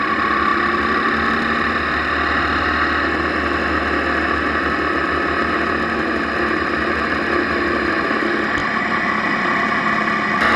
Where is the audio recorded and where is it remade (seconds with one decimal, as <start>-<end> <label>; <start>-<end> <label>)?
0.0-10.6 recorded